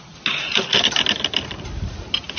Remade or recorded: recorded